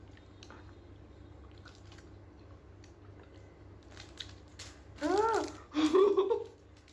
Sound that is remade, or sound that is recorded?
recorded